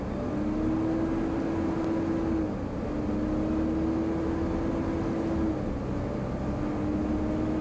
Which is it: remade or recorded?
recorded